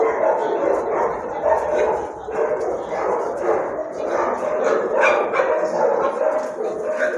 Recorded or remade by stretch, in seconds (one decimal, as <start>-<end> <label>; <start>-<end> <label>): 0.0-7.2 recorded